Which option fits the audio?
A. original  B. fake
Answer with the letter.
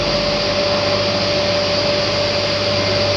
A